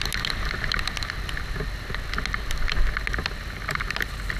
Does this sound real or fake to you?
real